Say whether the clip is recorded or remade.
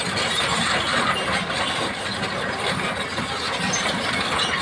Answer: recorded